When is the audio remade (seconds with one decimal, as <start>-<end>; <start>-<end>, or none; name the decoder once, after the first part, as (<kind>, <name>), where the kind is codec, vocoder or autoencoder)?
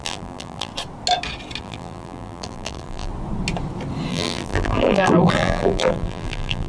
0.0-0.7 (vocoder, BigVGAN v2); 1.6-3.1; 4.1-6.7